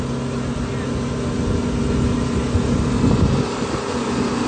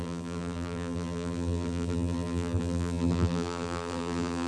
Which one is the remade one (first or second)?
second